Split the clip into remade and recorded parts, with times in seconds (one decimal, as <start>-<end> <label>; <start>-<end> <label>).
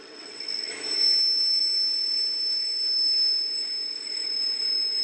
0.0-0.7 remade; 0.7-5.0 recorded